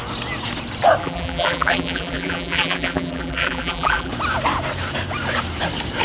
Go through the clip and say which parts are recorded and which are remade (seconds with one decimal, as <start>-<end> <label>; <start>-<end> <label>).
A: 0.0-1.0 recorded; 1.0-4.1 remade; 4.1-6.0 recorded